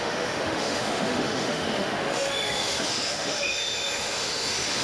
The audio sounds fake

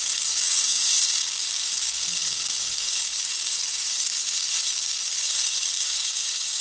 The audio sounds fake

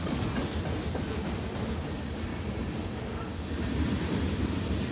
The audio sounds fake